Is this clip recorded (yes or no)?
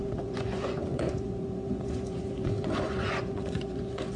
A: no